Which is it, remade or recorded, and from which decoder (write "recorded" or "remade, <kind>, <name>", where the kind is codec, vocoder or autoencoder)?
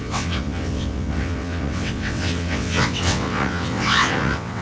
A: remade, vocoder, WaveNeXt